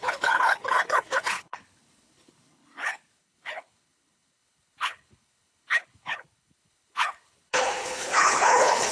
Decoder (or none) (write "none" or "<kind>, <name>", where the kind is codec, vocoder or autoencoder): codec, HILCodec